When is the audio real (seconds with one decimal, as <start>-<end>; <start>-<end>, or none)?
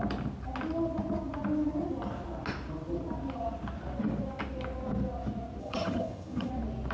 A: 0.0-5.6; 6.5-6.9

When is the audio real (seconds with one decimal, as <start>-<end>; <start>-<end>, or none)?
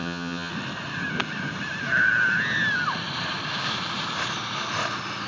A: 0.5-5.3